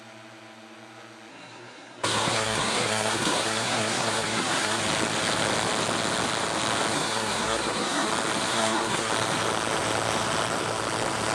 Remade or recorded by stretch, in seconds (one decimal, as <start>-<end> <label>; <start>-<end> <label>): 0.0-1.3 recorded; 1.3-4.8 remade; 4.8-6.9 recorded; 6.9-8.1 remade; 8.1-8.5 recorded; 8.5-9.1 remade; 9.1-11.3 recorded